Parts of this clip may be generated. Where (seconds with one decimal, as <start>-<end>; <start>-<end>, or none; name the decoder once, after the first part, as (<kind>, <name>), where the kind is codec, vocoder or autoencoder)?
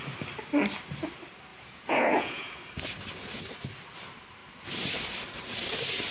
1.5-2.6 (vocoder, Vocos)